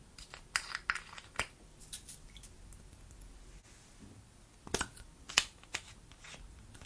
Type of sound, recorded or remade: recorded